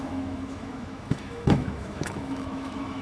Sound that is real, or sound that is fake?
fake